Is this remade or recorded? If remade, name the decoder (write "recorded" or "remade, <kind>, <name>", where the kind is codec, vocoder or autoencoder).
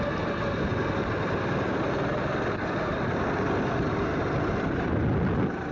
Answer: recorded